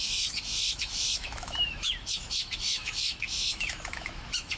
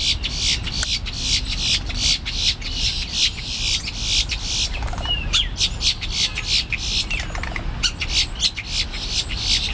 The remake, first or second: first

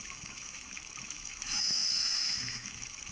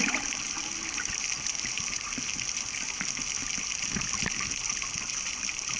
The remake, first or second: first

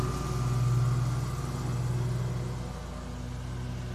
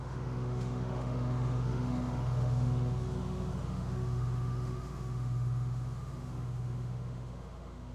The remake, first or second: second